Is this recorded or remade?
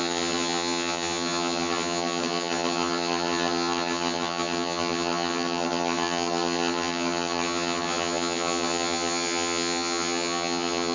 remade